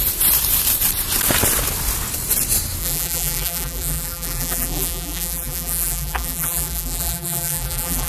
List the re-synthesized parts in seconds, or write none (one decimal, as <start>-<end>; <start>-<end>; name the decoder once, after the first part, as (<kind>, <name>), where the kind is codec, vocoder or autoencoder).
2.8-8.1 (vocoder, BigVGAN v2)